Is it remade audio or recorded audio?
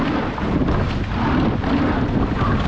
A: recorded